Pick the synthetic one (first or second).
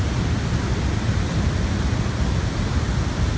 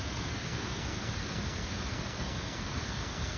second